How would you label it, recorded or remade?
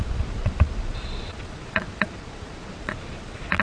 remade